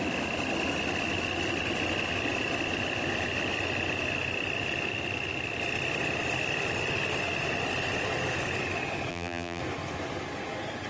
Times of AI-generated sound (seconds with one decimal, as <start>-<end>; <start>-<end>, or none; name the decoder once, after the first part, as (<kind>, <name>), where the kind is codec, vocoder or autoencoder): 9.1-9.6 (vocoder, BigVGAN v2)